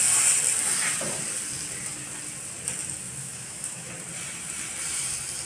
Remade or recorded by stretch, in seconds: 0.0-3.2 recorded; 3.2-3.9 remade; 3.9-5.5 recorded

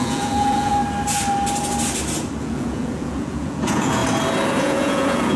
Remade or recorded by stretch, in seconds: 0.0-0.8 remade; 0.8-2.4 recorded; 2.4-4.0 remade; 4.0-4.6 recorded; 4.6-5.4 remade

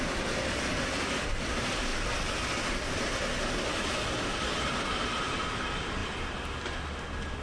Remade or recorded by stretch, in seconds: 0.0-7.4 recorded

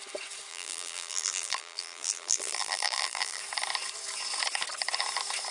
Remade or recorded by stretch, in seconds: 0.0-0.5 recorded; 0.5-3.4 remade; 3.4-5.5 recorded

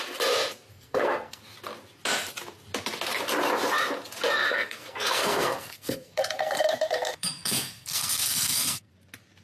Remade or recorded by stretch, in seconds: 0.0-0.7 recorded; 0.7-1.4 remade; 1.4-4.4 recorded; 4.4-8.9 remade; 8.9-9.4 recorded

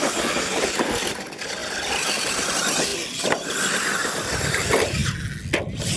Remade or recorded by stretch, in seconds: 0.0-4.0 recorded; 4.0-4.6 remade; 4.6-6.0 recorded